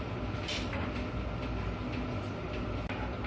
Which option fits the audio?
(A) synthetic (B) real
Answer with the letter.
B